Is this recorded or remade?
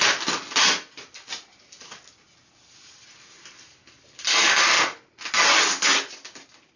recorded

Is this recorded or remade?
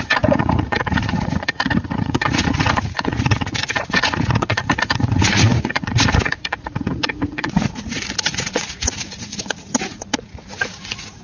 remade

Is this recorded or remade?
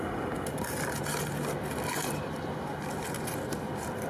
recorded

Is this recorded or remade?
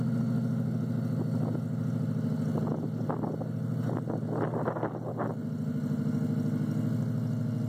recorded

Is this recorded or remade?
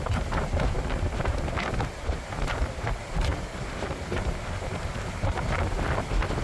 recorded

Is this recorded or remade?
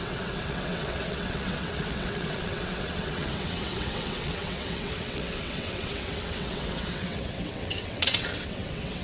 remade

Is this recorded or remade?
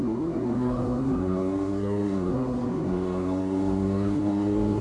remade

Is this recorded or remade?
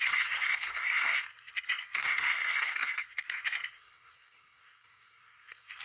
remade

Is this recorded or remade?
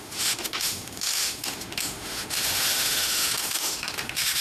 remade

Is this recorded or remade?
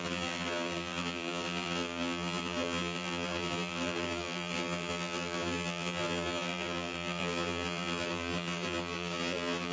remade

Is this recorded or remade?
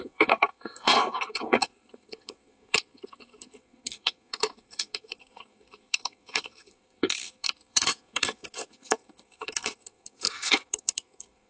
remade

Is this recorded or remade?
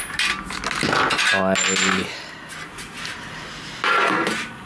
recorded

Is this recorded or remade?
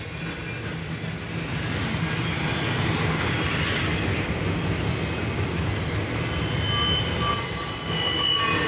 recorded